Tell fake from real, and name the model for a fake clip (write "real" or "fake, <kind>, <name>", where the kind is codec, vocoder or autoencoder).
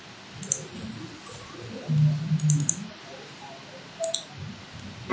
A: real